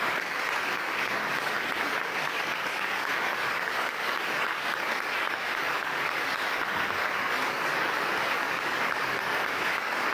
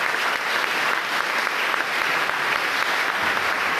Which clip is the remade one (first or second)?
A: first